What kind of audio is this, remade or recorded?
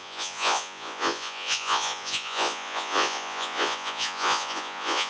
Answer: remade